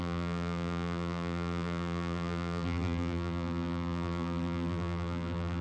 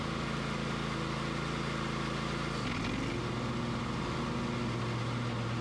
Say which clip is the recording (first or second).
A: second